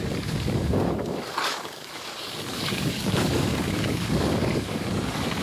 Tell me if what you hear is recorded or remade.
remade